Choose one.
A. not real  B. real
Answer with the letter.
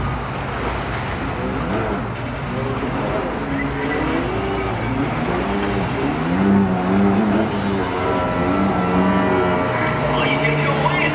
B